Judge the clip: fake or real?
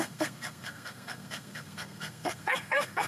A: fake